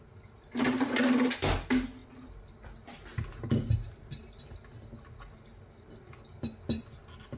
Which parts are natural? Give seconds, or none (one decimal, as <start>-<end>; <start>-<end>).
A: 0.0-7.4